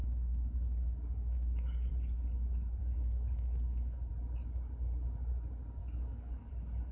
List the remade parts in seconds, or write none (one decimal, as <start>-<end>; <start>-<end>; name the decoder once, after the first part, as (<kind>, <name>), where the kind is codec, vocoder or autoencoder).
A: 0.0-1.9 (codec, DAC); 2.8-4.1; 5.8-6.5